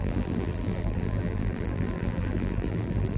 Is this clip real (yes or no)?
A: no